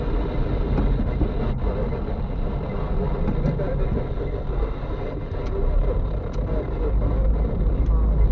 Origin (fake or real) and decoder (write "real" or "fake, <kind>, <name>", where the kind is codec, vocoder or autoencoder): real